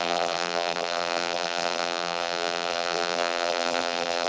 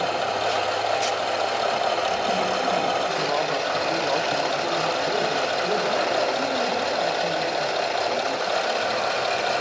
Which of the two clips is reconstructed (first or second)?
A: first